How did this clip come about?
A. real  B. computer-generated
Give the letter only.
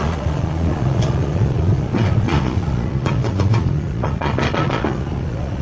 B